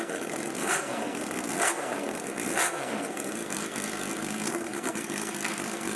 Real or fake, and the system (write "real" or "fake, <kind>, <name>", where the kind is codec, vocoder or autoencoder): fake, codec, SNAC